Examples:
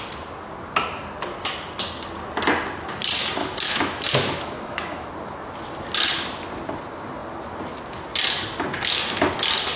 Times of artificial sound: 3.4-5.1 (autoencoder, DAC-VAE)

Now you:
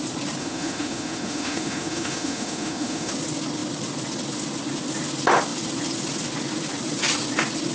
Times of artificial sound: 0.4-3.1 (autoencoder, DAC-VAE)

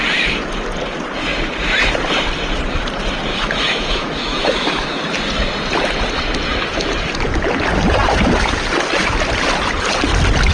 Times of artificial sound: 3.3-5.0 (autoencoder, DAC-VAE)